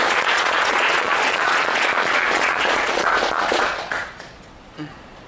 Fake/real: fake